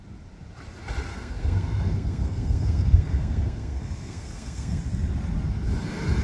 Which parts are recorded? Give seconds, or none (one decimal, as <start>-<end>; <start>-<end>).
0.0-1.1; 4.8-6.2